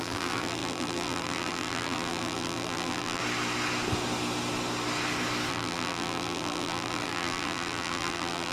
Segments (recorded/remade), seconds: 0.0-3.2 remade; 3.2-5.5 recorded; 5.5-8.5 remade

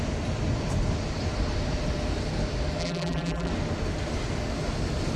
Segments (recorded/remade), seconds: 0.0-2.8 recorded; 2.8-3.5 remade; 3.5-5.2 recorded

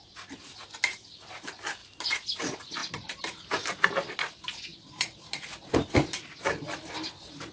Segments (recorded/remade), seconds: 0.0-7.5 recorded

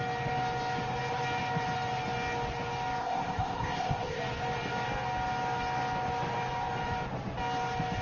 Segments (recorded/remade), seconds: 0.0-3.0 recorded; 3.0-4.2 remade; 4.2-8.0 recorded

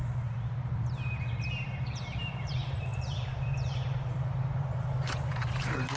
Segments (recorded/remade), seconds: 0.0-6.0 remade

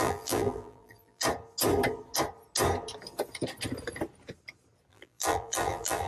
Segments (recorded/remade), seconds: 0.0-1.2 remade; 1.2-4.9 recorded; 4.9-6.1 remade